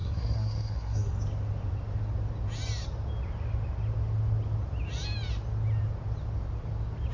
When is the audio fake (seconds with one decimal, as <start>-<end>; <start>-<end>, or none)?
0.0-1.1

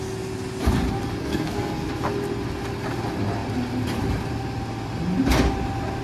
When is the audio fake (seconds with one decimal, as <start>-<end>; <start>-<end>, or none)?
1.2-1.9

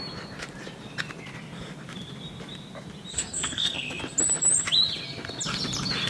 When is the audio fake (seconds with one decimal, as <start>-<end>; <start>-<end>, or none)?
3.1-4.0

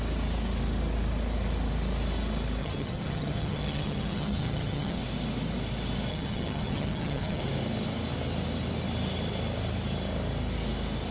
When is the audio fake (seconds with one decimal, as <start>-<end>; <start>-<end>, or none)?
2.6-5.0; 6.1-7.4

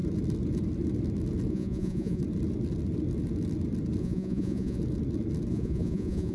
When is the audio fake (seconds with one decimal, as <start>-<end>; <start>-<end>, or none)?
1.5-2.2; 4.0-4.8; 5.5-6.3

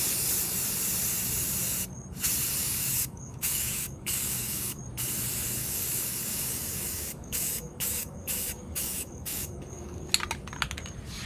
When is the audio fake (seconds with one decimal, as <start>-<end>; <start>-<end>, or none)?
2.6-4.8; 5.6-10.1